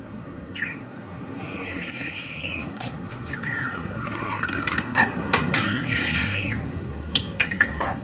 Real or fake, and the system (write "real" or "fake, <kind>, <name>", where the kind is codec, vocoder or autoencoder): fake, codec, SNAC